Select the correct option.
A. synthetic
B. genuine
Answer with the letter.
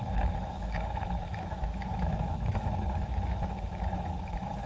A